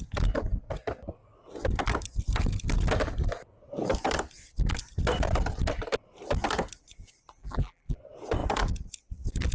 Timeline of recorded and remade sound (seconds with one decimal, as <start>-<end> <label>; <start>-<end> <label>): 0.0-7.4 recorded; 7.4-8.0 remade; 8.0-9.5 recorded

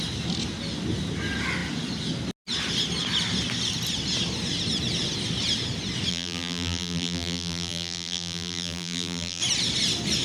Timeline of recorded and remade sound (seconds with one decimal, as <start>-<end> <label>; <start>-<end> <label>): 0.0-6.1 recorded; 6.1-9.4 remade; 9.4-10.2 recorded

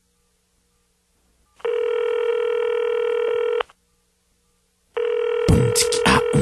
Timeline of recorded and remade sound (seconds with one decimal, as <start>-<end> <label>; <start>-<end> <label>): 0.0-6.4 recorded

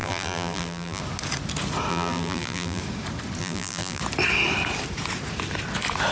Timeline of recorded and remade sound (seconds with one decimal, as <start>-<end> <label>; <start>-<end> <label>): 0.0-1.0 remade; 1.0-1.9 recorded; 1.9-2.8 remade; 2.8-3.4 recorded; 3.4-4.0 remade; 4.0-6.1 recorded

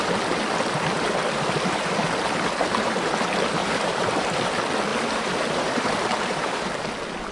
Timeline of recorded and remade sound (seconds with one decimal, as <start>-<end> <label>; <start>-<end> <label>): 0.0-2.6 recorded; 2.6-3.1 remade; 3.1-3.6 recorded; 3.6-4.4 remade; 4.4-4.9 recorded; 4.9-6.8 remade; 6.8-7.3 recorded